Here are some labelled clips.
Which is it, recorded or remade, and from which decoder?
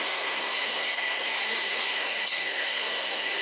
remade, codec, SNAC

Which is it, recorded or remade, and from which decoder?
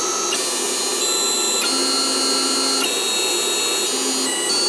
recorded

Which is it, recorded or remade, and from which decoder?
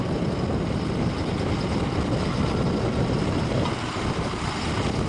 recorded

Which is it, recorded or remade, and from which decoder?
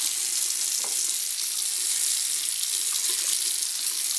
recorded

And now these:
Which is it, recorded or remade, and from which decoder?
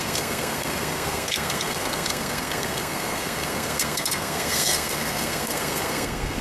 remade, codec, SNAC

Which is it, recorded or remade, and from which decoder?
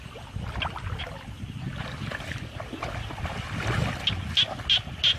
recorded